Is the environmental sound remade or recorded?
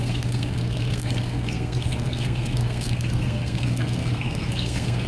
remade